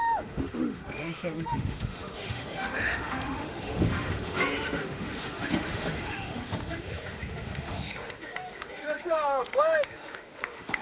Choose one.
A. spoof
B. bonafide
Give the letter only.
A